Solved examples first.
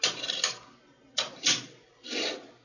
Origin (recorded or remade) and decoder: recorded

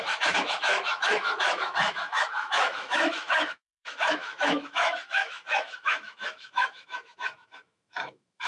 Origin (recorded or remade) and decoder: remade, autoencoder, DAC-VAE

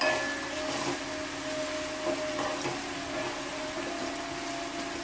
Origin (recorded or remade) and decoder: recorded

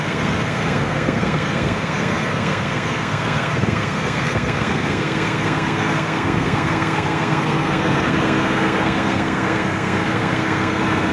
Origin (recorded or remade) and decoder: remade, codec, SNAC